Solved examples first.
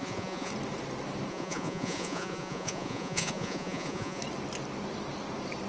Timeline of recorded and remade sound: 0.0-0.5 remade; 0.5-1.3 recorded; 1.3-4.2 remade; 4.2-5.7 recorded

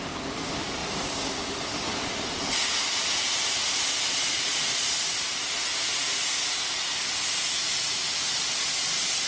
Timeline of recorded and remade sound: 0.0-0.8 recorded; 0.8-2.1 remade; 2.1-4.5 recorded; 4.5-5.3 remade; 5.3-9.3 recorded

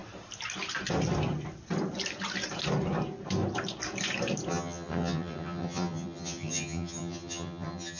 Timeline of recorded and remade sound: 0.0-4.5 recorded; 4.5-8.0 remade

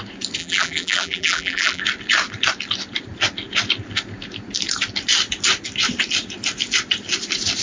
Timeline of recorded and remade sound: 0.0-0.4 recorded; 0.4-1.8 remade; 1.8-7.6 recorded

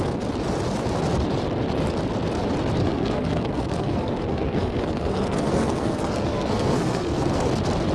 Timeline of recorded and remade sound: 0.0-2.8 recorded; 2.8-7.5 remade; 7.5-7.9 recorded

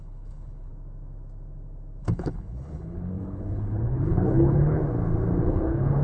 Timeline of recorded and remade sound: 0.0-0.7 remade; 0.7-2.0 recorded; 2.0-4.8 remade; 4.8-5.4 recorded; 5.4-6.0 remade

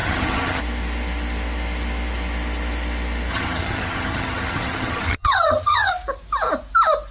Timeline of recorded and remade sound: 0.0-0.6 remade; 0.6-3.3 recorded; 3.3-5.9 remade; 5.9-7.1 recorded